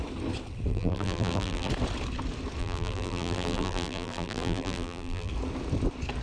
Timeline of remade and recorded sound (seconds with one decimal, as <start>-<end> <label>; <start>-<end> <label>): 0.0-0.7 recorded; 0.7-1.7 remade; 1.7-2.6 recorded; 2.6-5.3 remade; 5.3-6.2 recorded